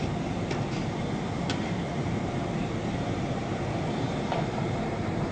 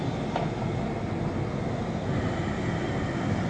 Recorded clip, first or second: second